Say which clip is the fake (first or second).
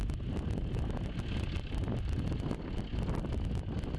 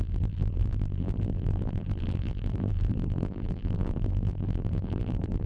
second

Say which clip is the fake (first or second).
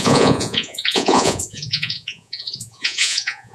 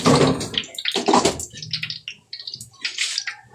first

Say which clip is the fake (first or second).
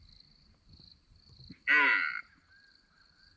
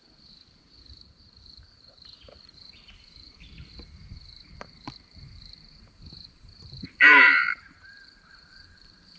second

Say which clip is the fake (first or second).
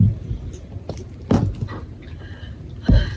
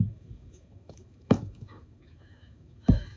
second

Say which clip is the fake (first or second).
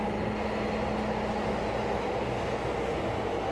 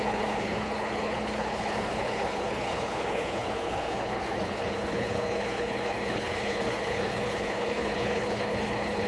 second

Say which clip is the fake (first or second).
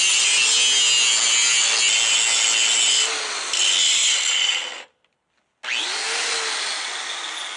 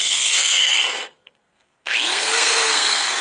second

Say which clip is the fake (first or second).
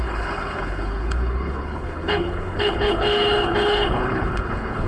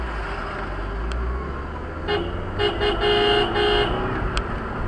first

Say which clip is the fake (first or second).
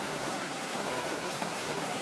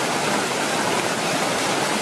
first